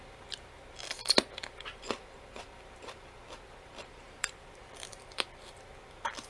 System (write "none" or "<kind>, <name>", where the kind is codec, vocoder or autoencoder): vocoder, BigVGAN v2